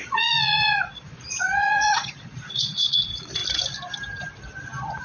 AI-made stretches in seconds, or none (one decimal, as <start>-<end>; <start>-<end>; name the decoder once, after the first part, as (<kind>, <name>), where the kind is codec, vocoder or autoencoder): 0.0-3.4 (vocoder, Vocos)